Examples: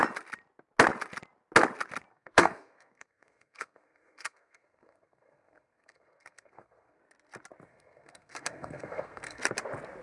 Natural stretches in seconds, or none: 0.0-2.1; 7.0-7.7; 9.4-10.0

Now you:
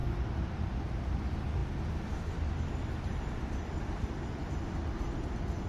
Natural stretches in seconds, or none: 0.0-5.7

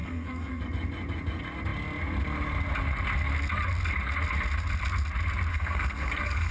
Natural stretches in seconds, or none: 0.6-5.5

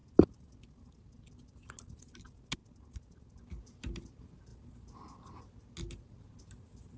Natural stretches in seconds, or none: 0.0-7.0

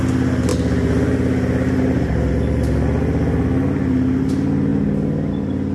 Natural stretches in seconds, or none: 0.0-5.7

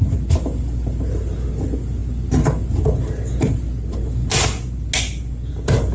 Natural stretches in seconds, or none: 0.0-5.9

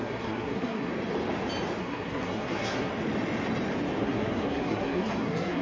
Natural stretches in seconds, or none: 0.9-1.8; 2.9-4.0

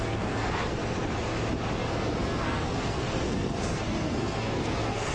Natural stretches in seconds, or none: 0.8-1.8